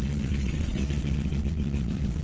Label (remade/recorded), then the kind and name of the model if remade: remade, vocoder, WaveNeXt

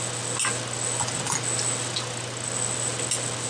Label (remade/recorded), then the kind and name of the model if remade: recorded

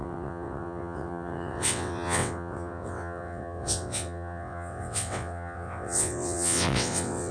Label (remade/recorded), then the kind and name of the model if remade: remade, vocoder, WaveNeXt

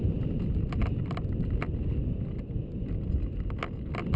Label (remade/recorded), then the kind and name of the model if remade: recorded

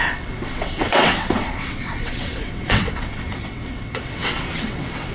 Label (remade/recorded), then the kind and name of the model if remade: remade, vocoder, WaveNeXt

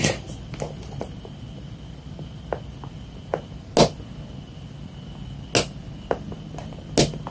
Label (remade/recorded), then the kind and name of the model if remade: recorded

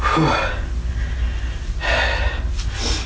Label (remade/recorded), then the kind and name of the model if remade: recorded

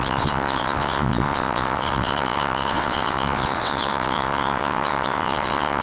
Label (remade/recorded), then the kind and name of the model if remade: remade, vocoder, WaveNeXt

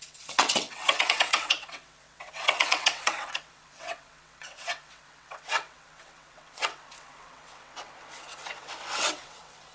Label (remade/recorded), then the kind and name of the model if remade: remade, vocoder, WaveNeXt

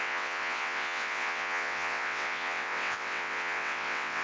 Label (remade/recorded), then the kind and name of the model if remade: remade, vocoder, WaveNeXt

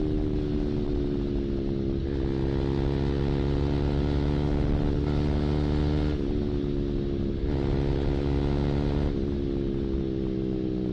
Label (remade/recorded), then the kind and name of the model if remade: recorded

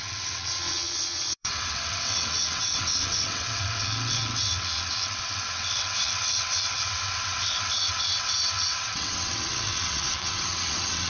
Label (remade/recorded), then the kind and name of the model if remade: remade, vocoder, WaveNeXt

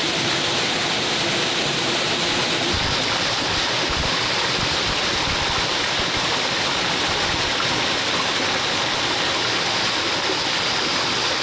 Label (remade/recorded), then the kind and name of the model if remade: recorded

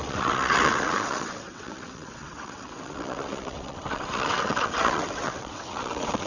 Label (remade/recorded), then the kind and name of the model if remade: remade, vocoder, WaveNeXt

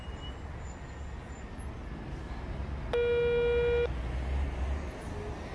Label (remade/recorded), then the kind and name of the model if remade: recorded